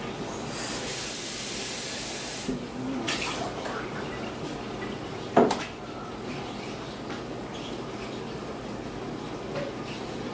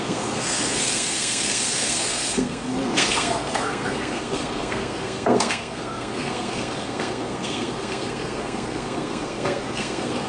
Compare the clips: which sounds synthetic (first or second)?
second